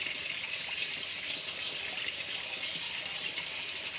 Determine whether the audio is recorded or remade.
recorded